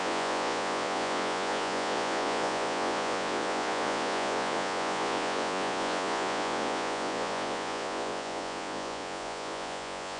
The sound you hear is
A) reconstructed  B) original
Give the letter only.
A